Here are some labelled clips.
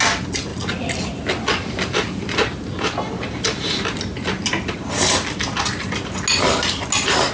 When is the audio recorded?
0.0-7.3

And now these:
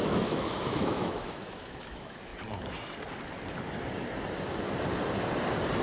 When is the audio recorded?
2.3-5.8

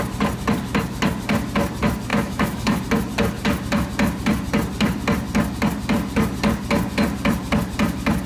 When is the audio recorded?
0.0-2.1; 2.8-8.3

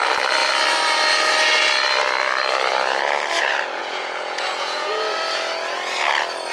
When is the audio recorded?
0.0-3.8; 4.9-6.5

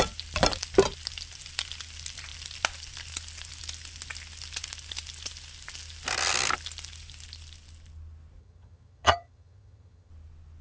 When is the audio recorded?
0.0-8.4; 10.1-10.6